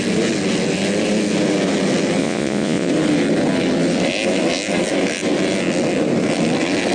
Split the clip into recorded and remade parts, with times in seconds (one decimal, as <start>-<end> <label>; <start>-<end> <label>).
0.0-2.2 recorded; 2.2-2.9 remade; 2.9-6.9 recorded